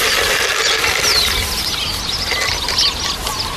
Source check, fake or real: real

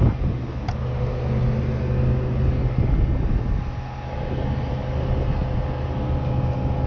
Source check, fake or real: real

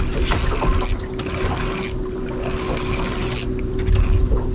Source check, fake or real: real